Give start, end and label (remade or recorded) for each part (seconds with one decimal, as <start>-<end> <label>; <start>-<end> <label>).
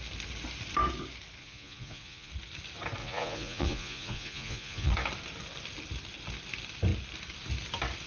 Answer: 0.0-1.4 recorded; 1.4-2.3 remade; 2.3-3.0 recorded; 3.0-4.9 remade; 4.9-8.1 recorded